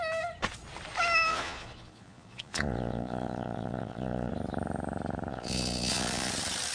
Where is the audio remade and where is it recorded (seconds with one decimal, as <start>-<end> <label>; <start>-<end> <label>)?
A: 0.0-1.3 recorded; 1.3-4.3 remade; 4.3-5.3 recorded; 5.3-6.3 remade; 6.3-6.7 recorded